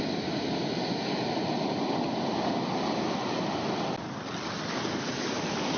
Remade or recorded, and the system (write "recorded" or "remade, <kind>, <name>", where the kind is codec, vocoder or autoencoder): recorded